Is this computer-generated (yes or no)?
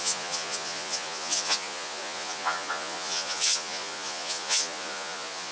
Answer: yes